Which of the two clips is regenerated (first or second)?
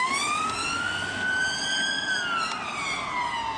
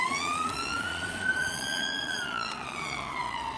second